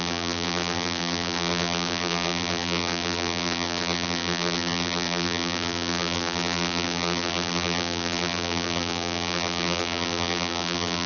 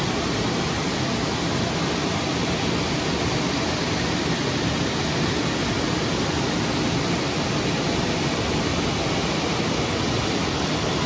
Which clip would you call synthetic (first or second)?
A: first